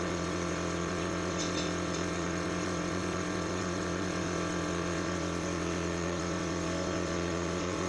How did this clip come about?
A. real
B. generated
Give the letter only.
B